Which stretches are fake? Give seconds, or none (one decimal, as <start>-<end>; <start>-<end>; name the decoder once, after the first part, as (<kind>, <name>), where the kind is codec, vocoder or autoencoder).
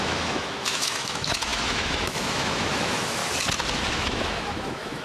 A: 0.0-3.2 (autoencoder, DAC-VAE); 3.9-5.0